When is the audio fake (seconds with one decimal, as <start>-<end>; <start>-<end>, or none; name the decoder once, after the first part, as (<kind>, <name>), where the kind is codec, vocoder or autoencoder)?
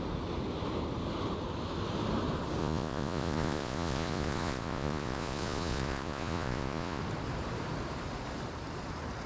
2.6-7.0 (vocoder, Vocos)